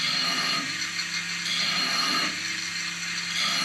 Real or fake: real